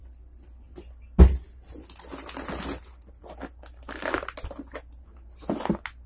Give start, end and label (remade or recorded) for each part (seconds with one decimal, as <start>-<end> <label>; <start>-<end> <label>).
0.0-6.1 recorded